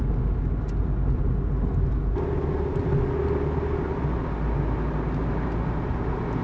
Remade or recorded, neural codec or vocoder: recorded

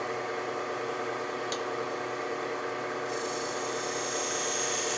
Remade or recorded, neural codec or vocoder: recorded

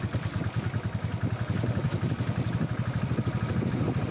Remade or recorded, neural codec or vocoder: recorded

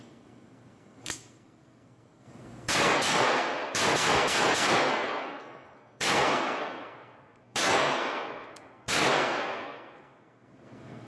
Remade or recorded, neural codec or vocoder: remade, codec, SNAC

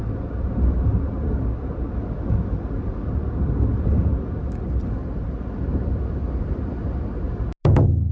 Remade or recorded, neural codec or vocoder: recorded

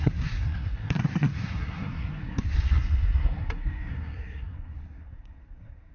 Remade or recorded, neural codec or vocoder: remade, codec, SNAC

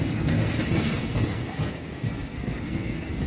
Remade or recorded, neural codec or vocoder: remade, codec, SNAC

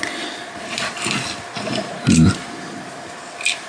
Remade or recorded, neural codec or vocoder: recorded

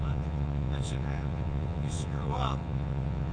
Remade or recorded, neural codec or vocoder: remade, vocoder, WaveNeXt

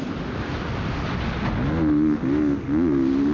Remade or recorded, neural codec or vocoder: recorded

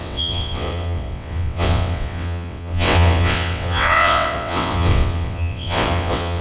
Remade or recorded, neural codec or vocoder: remade, vocoder, WaveNeXt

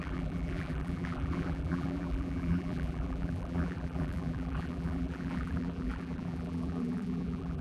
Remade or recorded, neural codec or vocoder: remade, vocoder, BigVGAN v2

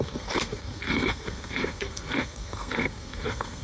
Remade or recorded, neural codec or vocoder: remade, codec, SNAC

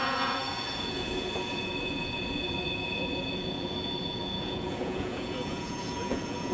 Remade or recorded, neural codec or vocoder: remade, vocoder, Vocos